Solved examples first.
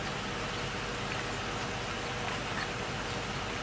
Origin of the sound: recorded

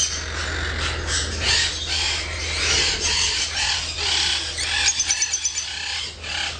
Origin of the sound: recorded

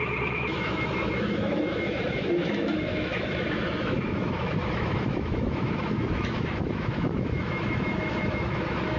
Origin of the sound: remade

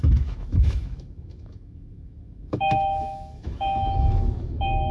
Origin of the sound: remade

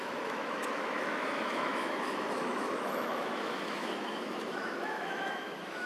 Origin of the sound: remade